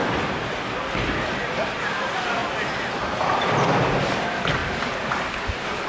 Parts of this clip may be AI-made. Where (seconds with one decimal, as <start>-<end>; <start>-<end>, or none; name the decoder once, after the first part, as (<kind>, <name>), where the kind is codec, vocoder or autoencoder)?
1.7-2.4 (vocoder, BigVGAN v2); 3.2-5.9